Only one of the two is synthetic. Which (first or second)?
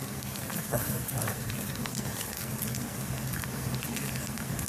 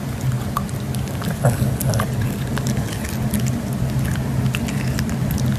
first